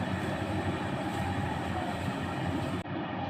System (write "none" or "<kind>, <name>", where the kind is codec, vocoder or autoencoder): vocoder, BigVGAN v2